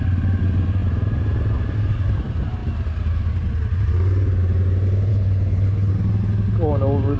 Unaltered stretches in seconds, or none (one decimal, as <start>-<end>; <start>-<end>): 0.0-5.1; 5.9-7.2